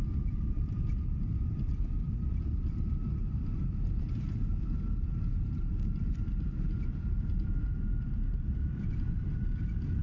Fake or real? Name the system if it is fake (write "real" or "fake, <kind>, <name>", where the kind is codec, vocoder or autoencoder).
fake, vocoder, BigVGAN v2